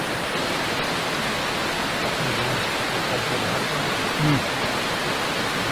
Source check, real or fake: real